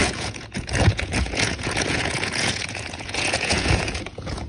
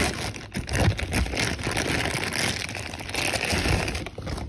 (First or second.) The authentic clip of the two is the second